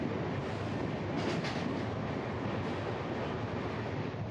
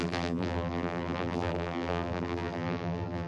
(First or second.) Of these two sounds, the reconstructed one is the second